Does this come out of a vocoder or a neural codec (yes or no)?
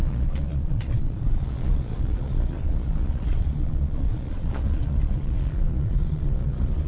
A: yes